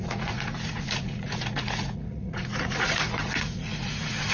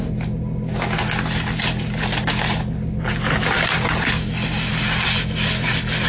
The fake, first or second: first